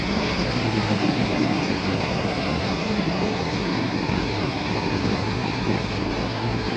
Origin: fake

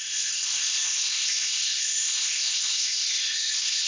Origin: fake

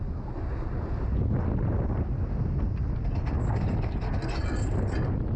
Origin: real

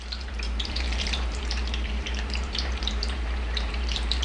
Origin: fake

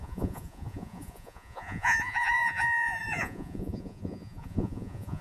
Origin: fake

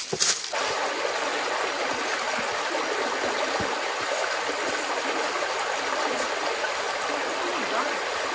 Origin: real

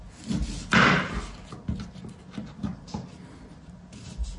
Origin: real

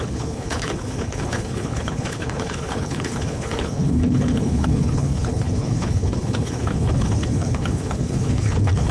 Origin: fake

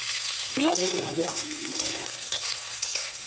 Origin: fake